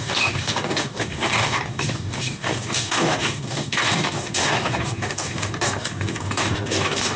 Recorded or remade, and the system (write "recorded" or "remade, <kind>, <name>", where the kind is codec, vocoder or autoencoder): remade, codec, DAC